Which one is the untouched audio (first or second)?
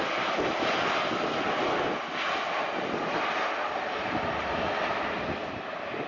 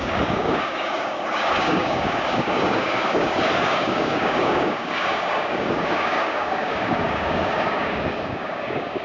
first